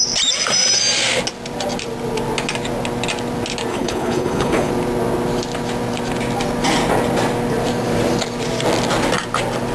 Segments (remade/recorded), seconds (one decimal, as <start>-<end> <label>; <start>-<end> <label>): 0.0-3.7 recorded; 3.7-4.7 remade; 4.7-9.7 recorded